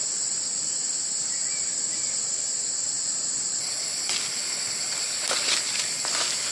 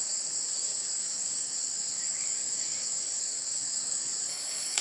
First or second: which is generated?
second